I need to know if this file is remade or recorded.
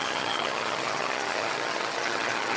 remade